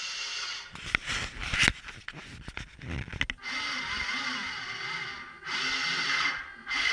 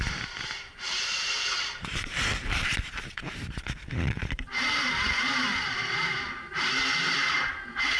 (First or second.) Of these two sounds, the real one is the first